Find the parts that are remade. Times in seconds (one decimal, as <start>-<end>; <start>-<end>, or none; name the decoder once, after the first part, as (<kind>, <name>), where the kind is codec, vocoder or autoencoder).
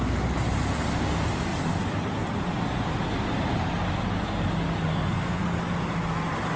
4.9-5.4 (codec, SNAC)